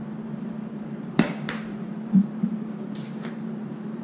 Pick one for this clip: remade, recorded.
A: remade